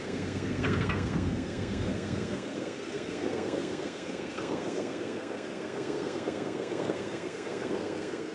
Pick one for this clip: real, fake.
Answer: fake